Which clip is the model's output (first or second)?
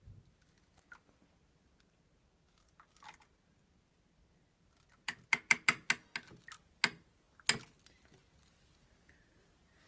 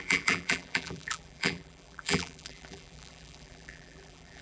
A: second